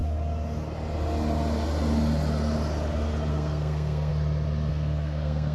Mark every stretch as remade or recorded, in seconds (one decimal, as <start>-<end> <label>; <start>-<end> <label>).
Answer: 0.0-3.3 recorded; 3.3-4.1 remade; 4.1-4.7 recorded; 4.7-5.5 remade

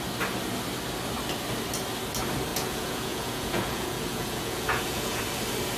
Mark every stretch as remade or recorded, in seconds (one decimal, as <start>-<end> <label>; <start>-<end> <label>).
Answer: 0.0-2.5 recorded; 2.5-5.2 remade; 5.2-5.8 recorded

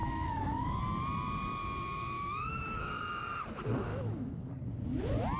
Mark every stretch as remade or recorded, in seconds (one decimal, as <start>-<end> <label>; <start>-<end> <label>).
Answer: 0.0-0.8 remade; 0.8-1.6 recorded; 1.6-3.2 remade; 3.2-3.9 recorded; 3.9-4.5 remade; 4.5-5.4 recorded

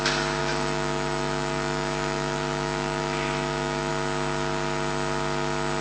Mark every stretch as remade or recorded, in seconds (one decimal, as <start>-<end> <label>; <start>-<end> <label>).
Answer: 0.0-0.4 recorded; 0.4-3.9 remade; 3.9-5.8 recorded

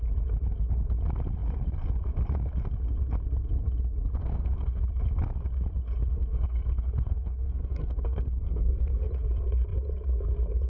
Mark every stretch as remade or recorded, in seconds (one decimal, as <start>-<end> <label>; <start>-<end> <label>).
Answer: 0.0-4.2 recorded; 4.2-4.8 remade; 4.8-6.1 recorded; 6.1-9.1 remade; 9.1-10.7 recorded

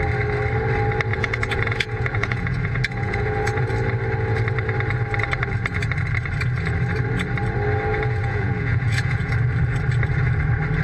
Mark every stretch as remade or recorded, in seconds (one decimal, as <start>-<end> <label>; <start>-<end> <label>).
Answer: 0.0-1.1 recorded; 1.1-3.7 remade; 3.7-7.9 recorded; 7.9-9.3 remade; 9.3-10.8 recorded